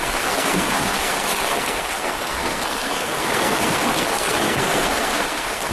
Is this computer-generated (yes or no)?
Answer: yes